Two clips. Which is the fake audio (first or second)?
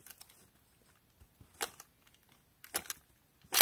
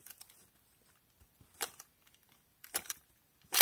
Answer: second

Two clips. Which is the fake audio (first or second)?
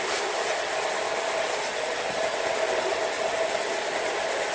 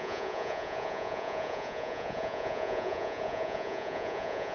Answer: second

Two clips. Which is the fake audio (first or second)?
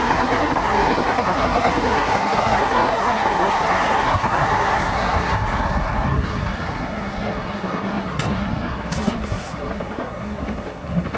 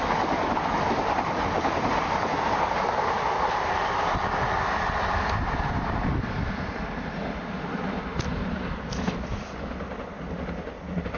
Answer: first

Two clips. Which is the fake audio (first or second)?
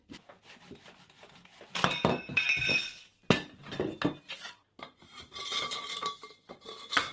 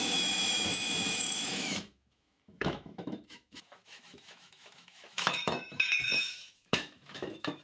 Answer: second